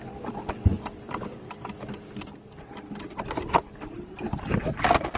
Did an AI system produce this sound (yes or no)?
no